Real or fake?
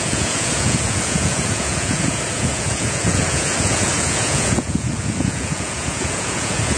fake